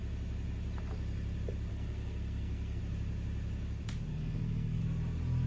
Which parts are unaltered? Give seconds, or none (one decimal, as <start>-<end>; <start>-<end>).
0.0-1.7; 2.8-4.1; 4.8-5.5